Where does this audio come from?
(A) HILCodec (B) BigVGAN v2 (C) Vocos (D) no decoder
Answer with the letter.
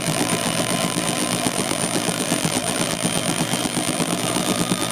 B